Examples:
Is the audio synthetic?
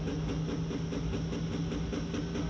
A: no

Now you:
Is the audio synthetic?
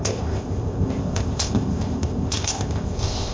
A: yes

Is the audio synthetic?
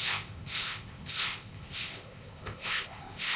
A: yes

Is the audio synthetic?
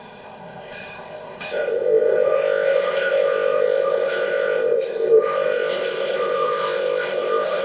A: yes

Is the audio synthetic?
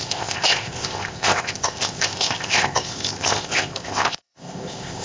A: yes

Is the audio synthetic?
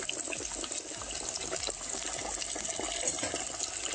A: no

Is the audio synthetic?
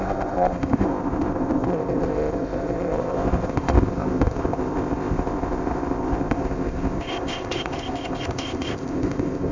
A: yes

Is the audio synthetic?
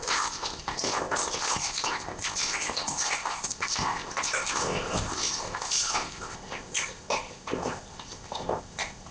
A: yes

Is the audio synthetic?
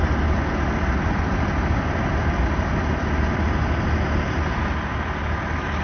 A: no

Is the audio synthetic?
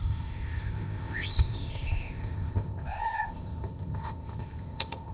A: yes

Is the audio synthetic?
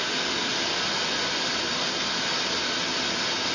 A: no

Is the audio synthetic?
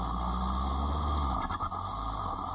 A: no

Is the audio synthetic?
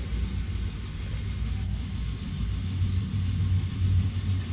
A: no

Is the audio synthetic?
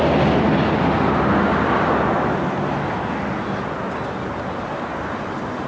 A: no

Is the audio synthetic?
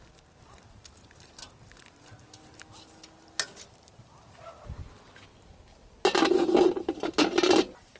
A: no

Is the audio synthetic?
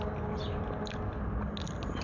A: no